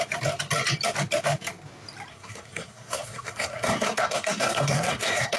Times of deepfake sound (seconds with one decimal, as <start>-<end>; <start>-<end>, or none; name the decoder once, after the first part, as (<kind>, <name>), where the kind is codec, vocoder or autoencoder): 2.1-5.4 (codec, SNAC)